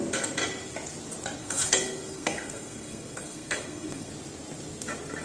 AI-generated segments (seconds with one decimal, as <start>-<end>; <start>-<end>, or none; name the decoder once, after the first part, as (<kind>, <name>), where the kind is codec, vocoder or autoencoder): 1.4-4.1 (codec, SNAC)